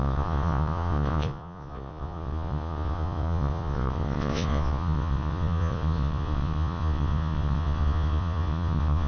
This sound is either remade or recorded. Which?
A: remade